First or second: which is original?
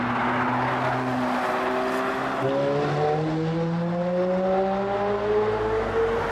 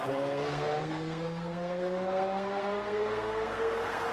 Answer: first